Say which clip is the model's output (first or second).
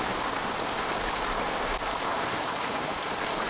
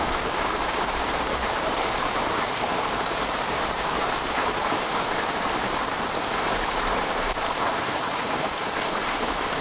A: second